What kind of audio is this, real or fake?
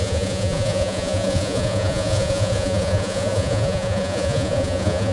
fake